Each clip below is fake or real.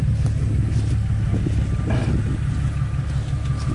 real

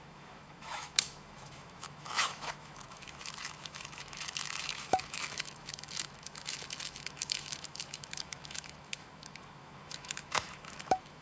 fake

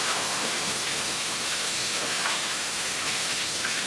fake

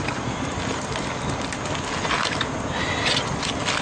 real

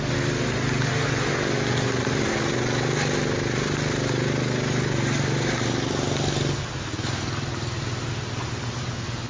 real